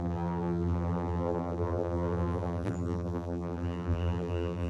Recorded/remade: remade